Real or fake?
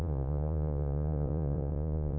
fake